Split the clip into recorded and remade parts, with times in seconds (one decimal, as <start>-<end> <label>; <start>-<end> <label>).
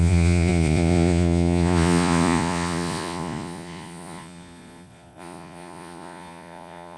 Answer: 0.0-7.0 remade